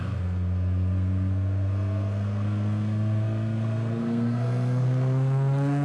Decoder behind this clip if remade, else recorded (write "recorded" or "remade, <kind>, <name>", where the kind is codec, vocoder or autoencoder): remade, codec, SNAC